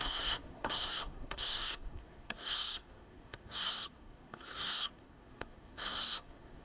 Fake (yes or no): yes